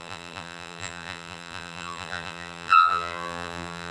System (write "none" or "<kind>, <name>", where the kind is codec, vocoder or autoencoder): vocoder, BigVGAN v2